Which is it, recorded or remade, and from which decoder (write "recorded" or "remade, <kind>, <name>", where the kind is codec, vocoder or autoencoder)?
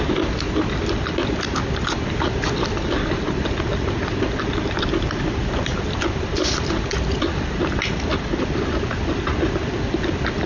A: recorded